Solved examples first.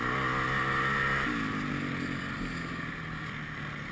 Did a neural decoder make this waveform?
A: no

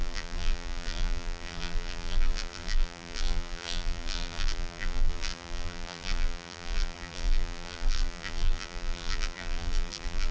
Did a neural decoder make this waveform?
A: yes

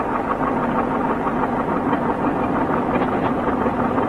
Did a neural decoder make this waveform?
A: no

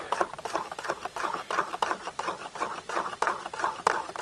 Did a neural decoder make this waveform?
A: yes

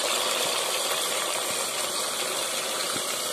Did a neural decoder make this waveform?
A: no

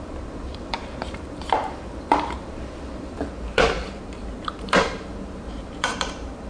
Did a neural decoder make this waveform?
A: yes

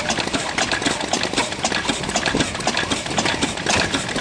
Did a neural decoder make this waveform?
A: yes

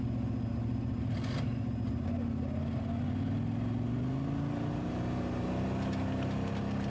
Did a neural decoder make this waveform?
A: no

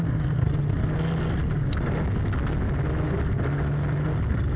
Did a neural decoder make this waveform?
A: no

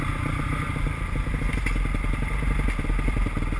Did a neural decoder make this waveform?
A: no